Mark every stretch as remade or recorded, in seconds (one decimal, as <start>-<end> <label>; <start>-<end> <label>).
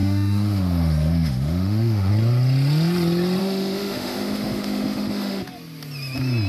0.0-2.1 remade; 2.1-3.4 recorded; 3.4-5.4 remade; 5.4-6.5 recorded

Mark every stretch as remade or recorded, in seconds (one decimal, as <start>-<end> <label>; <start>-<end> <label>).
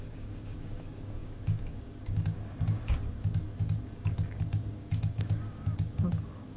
0.0-6.6 remade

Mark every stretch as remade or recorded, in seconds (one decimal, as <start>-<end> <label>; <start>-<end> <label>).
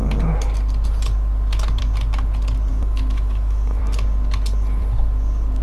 0.0-2.7 recorded; 2.7-3.8 remade; 3.8-5.6 recorded